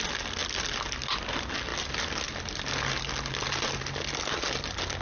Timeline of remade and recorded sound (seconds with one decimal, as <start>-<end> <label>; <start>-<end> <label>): 0.0-5.0 recorded